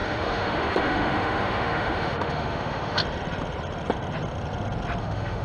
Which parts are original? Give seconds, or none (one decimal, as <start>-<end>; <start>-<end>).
3.0-5.0